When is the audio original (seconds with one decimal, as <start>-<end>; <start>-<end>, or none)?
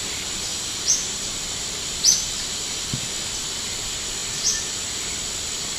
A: 0.0-5.8